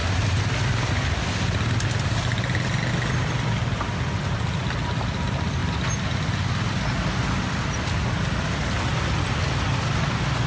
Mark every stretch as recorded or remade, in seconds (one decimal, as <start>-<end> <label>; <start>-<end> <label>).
0.0-10.5 recorded